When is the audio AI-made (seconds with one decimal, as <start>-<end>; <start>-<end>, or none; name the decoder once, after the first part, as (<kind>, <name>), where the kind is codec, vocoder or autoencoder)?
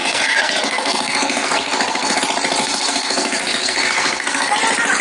0.0-2.2 (codec, SNAC); 2.6-4.5